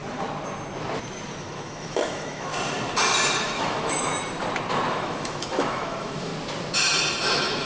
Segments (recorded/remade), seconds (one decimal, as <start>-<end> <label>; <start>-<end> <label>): 0.0-1.4 recorded; 1.4-2.5 remade; 2.5-3.4 recorded; 3.4-4.1 remade; 4.1-4.9 recorded; 4.9-6.3 remade; 6.3-7.2 recorded; 7.2-7.7 remade